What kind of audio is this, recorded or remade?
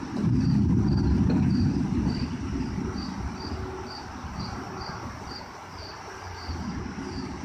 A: recorded